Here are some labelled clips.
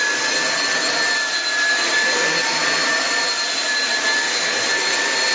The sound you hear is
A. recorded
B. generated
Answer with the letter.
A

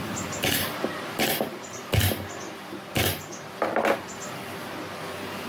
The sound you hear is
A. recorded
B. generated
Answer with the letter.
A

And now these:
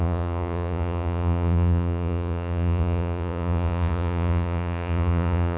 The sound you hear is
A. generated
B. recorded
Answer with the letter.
A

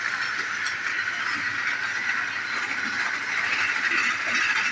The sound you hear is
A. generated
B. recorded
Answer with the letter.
B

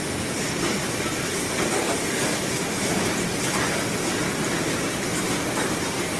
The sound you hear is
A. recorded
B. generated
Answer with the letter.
B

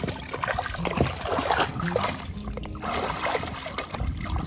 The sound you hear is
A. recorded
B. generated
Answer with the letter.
A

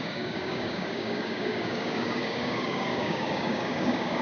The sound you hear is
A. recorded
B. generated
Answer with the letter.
B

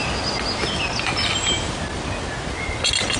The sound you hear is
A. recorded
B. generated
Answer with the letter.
A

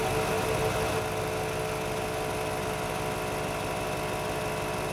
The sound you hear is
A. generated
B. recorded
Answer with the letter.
B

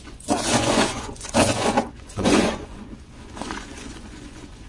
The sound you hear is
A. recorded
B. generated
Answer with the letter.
B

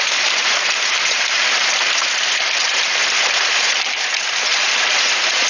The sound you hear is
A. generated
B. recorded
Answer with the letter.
A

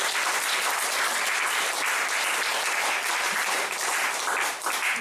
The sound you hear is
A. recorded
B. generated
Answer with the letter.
A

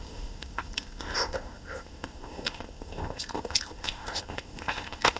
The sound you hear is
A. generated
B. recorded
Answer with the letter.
A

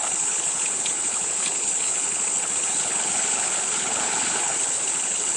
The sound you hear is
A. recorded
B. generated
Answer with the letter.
B